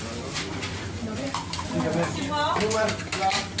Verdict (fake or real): real